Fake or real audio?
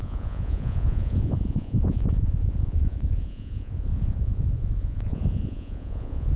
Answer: fake